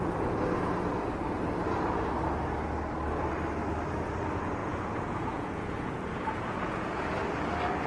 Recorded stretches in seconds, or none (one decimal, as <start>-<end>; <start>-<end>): 0.0-4.6; 7.1-7.9